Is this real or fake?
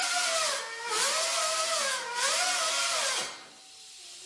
real